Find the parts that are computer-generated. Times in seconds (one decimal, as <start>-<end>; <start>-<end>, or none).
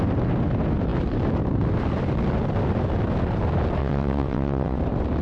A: 3.8-4.8